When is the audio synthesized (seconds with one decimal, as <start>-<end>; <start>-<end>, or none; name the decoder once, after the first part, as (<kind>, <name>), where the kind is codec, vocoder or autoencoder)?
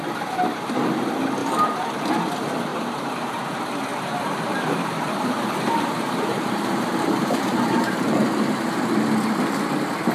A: 1.4-2.0 (vocoder, BigVGAN v2); 2.7-3.5; 3.9-8.8